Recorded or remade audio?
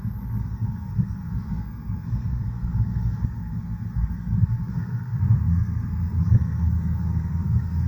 remade